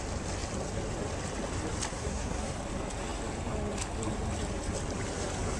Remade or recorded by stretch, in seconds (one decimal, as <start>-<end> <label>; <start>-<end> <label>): 0.0-1.9 recorded; 1.9-2.6 remade; 2.6-5.6 recorded